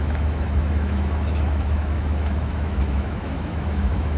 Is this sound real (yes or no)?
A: no